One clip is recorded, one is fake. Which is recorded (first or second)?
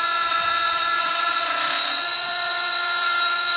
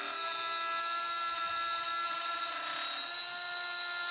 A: second